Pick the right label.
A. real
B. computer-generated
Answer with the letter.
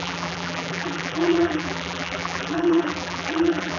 B